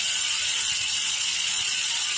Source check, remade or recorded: remade